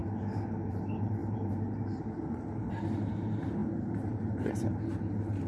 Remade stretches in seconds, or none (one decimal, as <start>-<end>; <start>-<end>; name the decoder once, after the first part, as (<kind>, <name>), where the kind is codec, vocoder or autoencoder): 0.7-5.5 (vocoder, BigVGAN v2)